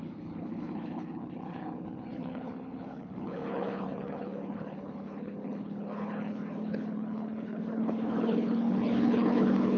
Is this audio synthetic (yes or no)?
yes